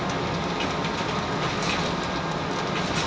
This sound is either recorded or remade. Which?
recorded